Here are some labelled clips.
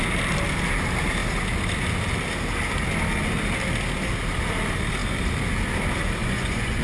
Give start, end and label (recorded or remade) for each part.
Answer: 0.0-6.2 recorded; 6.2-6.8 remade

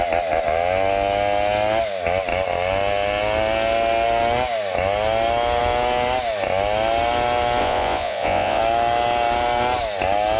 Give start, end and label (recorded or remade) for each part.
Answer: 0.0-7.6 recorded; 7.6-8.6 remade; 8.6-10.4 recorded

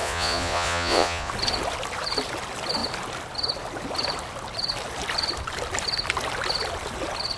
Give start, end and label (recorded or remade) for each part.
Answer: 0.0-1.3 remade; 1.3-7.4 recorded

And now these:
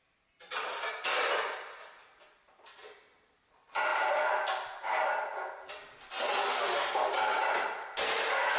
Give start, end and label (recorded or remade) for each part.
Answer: 0.0-8.6 recorded

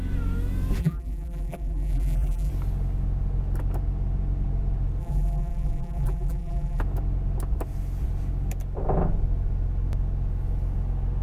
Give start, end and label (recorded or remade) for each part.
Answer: 0.0-0.8 recorded; 0.8-2.5 remade; 2.5-5.0 recorded; 5.0-6.8 remade; 6.8-11.2 recorded

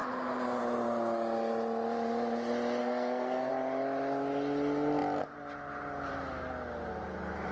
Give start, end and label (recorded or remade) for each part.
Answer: 0.0-2.8 recorded; 2.8-3.5 remade; 3.5-7.5 recorded